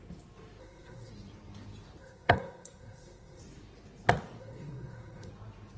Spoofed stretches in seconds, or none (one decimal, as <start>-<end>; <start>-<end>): 0.6-1.1; 2.0-3.4; 4.4-5.3